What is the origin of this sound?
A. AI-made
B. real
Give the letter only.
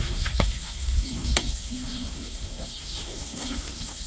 A